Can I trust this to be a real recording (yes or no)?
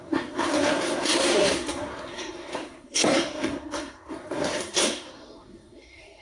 no